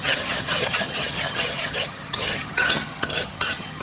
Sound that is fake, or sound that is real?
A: fake